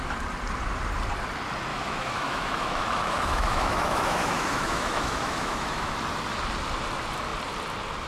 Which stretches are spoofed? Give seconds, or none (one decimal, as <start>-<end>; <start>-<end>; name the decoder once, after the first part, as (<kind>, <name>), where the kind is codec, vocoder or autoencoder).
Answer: 1.7-5.9 (autoencoder, DAC-VAE)